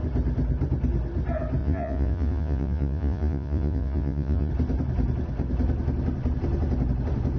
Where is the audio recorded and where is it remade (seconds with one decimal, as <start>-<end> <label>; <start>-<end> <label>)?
0.0-1.6 recorded; 1.6-4.5 remade; 4.5-7.4 recorded